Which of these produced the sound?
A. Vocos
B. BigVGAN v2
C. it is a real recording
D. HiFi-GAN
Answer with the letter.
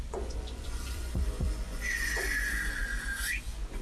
A